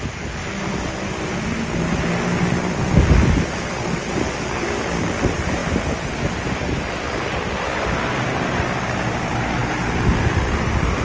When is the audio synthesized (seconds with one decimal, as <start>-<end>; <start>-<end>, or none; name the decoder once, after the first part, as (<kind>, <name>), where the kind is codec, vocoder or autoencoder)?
none